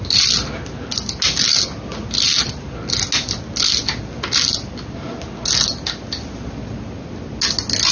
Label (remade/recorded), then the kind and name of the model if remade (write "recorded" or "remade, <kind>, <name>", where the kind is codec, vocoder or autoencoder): recorded